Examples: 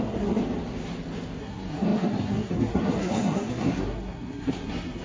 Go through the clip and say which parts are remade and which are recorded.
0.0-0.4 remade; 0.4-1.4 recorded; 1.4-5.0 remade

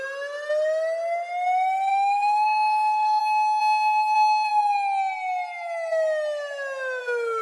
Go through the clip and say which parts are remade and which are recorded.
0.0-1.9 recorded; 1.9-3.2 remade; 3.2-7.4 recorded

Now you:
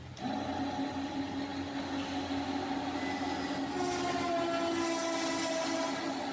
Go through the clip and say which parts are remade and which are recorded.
0.0-6.3 recorded